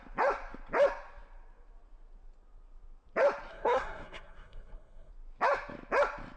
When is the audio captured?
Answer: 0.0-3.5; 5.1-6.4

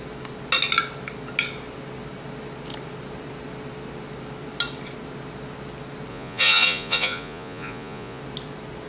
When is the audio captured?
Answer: 0.0-6.1; 8.2-8.9